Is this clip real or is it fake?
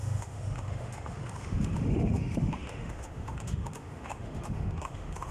fake